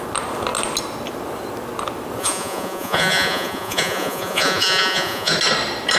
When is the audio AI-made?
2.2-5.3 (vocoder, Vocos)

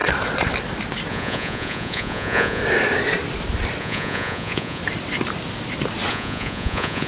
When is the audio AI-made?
1.1-2.6 (vocoder, Vocos); 3.8-4.8; 6.1-7.1

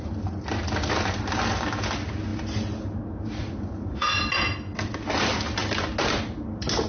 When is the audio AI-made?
3.4-4.2 (vocoder, Vocos)